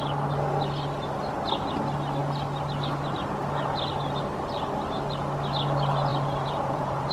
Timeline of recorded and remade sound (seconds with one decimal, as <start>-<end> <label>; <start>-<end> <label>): 0.0-6.1 recorded; 6.1-7.1 remade